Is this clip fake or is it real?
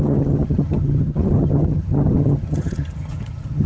fake